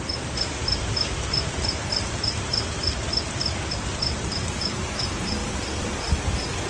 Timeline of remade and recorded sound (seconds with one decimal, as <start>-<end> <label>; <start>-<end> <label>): 0.0-6.7 recorded